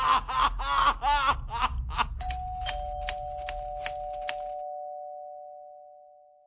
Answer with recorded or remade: recorded